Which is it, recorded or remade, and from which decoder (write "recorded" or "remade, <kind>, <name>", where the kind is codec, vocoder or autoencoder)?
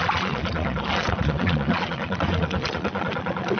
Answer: remade, vocoder, Vocos